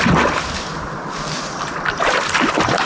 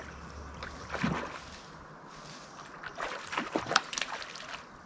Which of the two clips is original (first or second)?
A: second